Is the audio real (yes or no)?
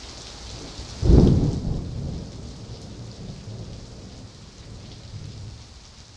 yes